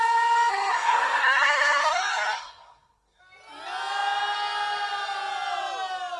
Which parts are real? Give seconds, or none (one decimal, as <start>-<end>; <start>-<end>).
0.0-0.5; 3.2-6.2